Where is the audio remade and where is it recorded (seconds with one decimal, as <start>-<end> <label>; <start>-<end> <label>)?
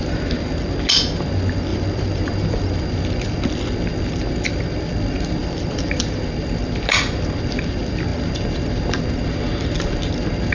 0.0-1.7 recorded; 1.7-2.9 remade; 2.9-5.4 recorded; 5.4-6.0 remade; 6.0-10.5 recorded